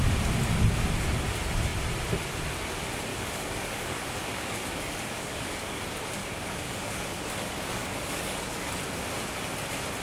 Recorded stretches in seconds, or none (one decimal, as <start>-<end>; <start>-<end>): 0.0-3.1; 5.8-6.2; 8.7-10.0